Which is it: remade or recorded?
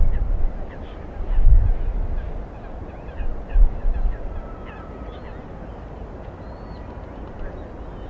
recorded